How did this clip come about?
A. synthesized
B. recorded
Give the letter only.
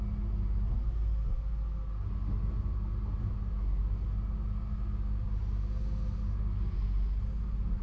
B